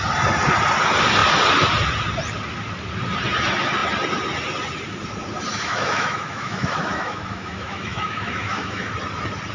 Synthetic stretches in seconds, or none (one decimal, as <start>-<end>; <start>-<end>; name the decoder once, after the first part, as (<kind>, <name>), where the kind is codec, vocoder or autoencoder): 5.5-8.9 (autoencoder, DAC-VAE)